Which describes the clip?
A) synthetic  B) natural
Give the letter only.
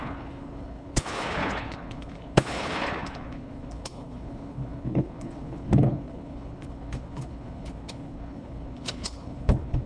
A